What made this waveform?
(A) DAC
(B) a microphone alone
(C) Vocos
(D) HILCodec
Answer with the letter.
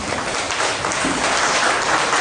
B